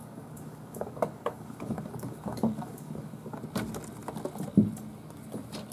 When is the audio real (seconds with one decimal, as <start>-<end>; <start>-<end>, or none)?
3.4-5.7